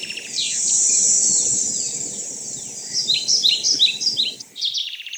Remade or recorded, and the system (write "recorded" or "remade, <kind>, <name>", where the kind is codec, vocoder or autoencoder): recorded